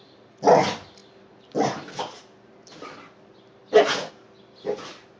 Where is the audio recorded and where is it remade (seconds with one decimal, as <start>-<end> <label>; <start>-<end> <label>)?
0.0-5.2 recorded